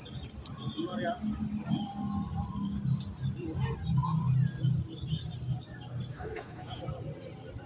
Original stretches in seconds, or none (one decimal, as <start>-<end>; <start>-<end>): 0.0-6.1; 6.8-7.7